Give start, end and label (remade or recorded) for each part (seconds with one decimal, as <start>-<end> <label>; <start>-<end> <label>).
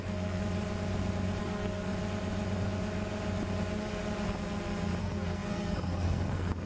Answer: 0.0-0.4 remade; 0.4-1.4 recorded; 1.4-1.9 remade; 1.9-5.0 recorded; 5.0-6.7 remade